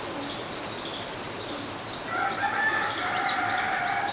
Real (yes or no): yes